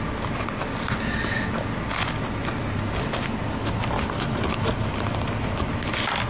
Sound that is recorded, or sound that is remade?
recorded